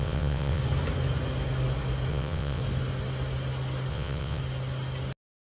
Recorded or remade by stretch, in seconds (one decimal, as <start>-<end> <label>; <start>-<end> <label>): 0.0-0.6 remade; 0.6-2.1 recorded; 2.1-2.6 remade; 2.6-3.9 recorded; 3.9-4.4 remade; 4.4-5.6 recorded